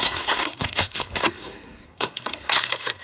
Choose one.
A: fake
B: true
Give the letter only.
A